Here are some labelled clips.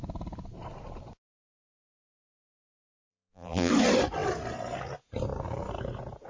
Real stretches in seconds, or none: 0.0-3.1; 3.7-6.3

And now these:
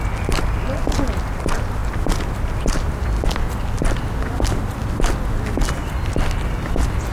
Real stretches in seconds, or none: 0.0-7.1

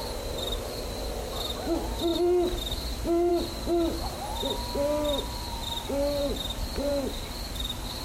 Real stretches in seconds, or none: 0.0-6.2; 6.9-8.0